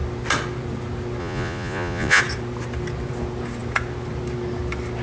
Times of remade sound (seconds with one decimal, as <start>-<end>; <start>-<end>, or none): 1.2-2.2